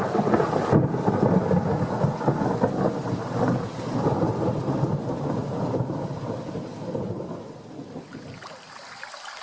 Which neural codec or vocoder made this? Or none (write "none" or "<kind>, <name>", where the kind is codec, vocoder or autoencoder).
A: none